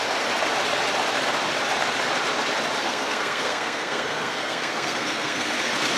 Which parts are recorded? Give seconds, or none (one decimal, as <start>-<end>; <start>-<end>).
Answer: 0.0-2.8; 5.5-6.0

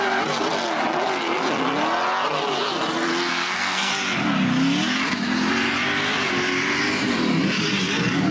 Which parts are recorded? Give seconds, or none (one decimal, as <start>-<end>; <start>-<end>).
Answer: 0.0-3.3; 3.9-8.3

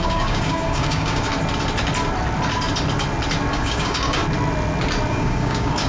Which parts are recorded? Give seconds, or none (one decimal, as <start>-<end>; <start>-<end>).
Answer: 1.3-3.5; 4.2-5.1

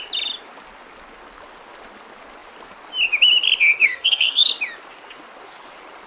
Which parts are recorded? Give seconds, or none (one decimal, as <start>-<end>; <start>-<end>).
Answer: 0.0-3.8; 4.5-6.1

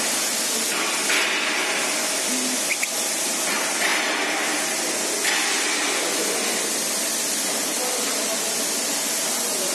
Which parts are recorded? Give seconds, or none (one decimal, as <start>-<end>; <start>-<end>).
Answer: 0.0-9.7

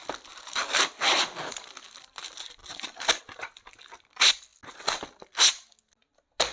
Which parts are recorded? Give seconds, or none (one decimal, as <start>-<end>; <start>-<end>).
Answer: 0.0-6.5

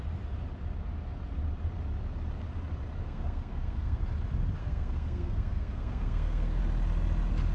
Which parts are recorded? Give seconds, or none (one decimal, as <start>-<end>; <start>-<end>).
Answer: 0.0-3.0; 4.0-4.6; 6.6-7.5